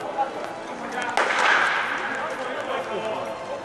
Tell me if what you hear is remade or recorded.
recorded